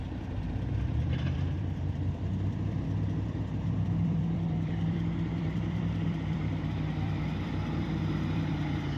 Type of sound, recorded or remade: remade